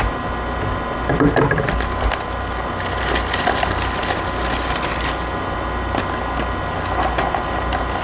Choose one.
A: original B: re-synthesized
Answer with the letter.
A